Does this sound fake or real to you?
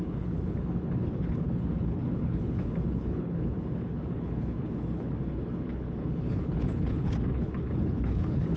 fake